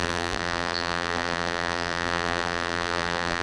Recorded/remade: remade